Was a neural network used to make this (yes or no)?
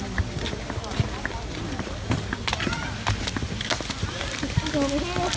no